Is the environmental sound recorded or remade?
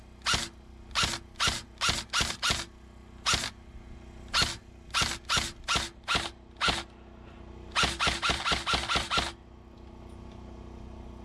recorded